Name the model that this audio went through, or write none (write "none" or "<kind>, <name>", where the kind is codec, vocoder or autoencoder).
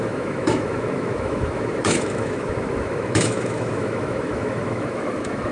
autoencoder, DAC-VAE